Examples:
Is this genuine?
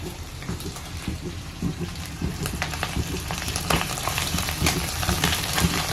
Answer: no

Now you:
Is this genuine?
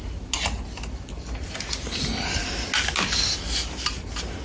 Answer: yes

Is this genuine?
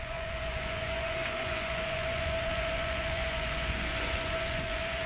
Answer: no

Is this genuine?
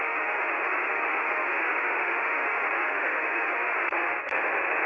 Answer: no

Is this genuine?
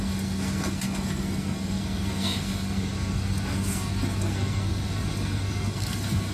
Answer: no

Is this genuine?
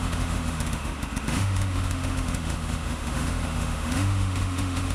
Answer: no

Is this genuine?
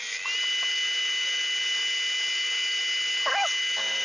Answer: yes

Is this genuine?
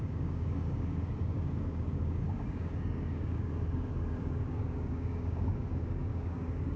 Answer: no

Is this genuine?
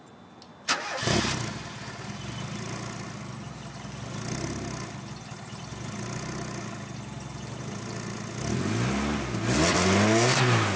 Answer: yes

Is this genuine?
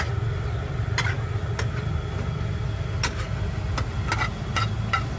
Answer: yes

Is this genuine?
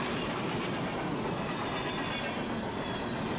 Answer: yes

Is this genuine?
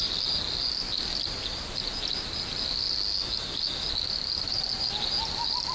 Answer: yes